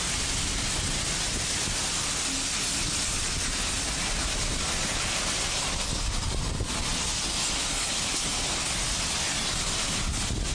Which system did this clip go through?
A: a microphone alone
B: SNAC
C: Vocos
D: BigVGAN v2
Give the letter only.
A